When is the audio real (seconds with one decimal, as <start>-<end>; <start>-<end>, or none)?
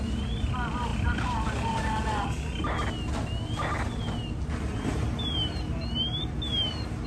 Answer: 0.0-7.1